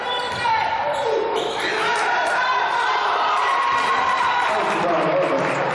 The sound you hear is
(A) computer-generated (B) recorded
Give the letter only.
A